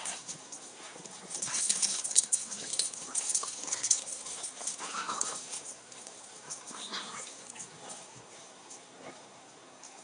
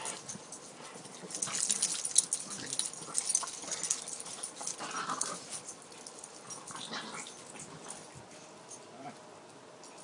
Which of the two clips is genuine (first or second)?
second